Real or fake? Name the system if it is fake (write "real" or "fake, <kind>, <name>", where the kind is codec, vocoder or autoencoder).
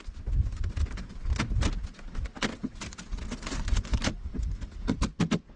real